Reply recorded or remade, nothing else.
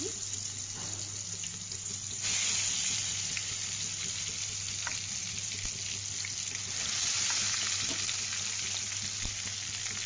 recorded